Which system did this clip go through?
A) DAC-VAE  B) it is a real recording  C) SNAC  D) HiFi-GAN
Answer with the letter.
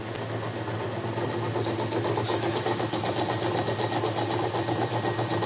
B